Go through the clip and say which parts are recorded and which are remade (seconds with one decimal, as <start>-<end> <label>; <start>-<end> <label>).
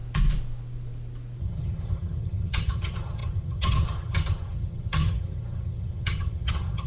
0.0-1.4 recorded; 1.4-6.9 remade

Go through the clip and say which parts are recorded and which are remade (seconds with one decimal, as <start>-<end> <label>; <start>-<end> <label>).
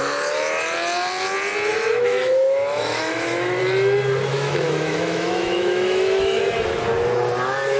0.0-1.7 recorded; 1.7-3.6 remade; 3.6-4.3 recorded; 4.3-6.4 remade; 6.4-7.8 recorded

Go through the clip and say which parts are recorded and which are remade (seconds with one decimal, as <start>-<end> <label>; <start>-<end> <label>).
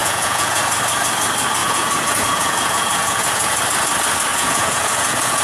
0.0-0.6 remade; 0.6-1.6 recorded; 1.6-3.6 remade; 3.6-4.3 recorded; 4.3-5.4 remade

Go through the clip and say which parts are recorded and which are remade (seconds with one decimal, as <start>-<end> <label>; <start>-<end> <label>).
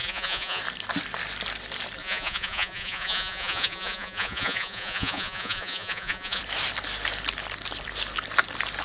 0.0-0.6 remade; 0.6-2.0 recorded; 2.0-6.4 remade; 6.4-8.8 recorded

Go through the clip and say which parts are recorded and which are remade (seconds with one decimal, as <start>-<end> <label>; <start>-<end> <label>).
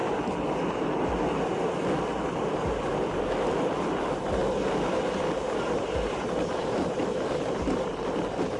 0.0-8.6 recorded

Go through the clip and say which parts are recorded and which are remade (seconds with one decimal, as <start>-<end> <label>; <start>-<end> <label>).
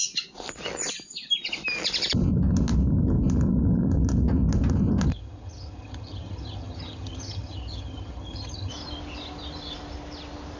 0.0-5.1 recorded; 5.1-8.7 remade; 8.7-10.6 recorded